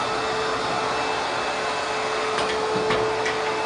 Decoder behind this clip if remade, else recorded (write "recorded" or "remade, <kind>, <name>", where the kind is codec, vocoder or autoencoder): recorded